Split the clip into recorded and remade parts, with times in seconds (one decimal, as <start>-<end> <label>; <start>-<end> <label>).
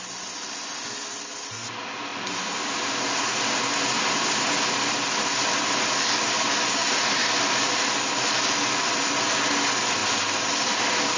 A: 0.0-11.2 recorded